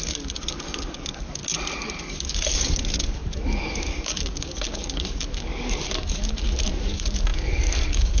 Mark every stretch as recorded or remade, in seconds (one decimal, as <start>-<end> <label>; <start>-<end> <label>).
0.0-1.4 remade; 1.4-2.0 recorded; 2.0-8.2 remade